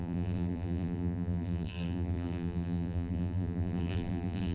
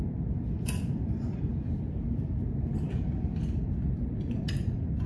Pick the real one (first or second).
second